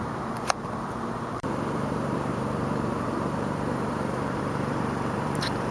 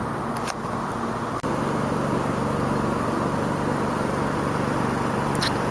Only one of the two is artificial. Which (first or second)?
first